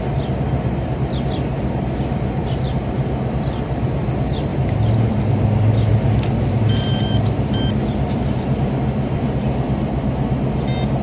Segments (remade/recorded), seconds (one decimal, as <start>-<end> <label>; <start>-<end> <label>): 0.0-5.9 recorded; 5.9-9.4 remade; 9.4-11.0 recorded